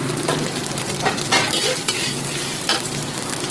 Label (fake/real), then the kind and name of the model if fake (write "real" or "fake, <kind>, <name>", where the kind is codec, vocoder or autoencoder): real